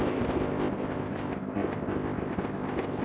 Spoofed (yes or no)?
yes